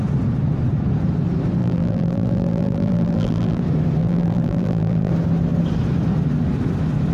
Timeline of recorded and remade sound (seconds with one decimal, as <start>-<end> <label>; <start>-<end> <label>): 0.0-1.6 recorded; 1.6-3.6 remade; 3.6-4.0 recorded; 4.0-5.1 remade; 5.1-7.1 recorded

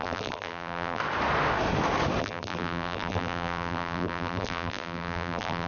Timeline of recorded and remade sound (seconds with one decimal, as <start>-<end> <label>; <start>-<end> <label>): 0.0-1.0 remade; 1.0-2.2 recorded; 2.2-5.7 remade